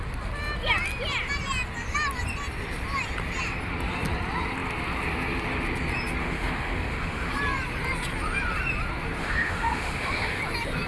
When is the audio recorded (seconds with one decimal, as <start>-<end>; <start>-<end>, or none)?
0.0-6.2; 7.3-9.2; 10.4-10.9